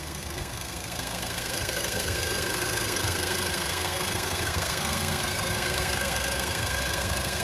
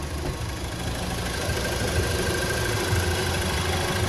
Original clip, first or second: second